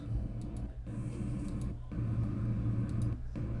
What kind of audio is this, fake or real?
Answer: real